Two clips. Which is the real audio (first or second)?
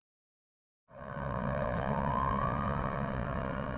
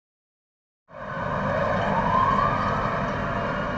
second